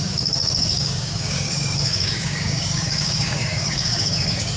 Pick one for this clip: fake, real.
fake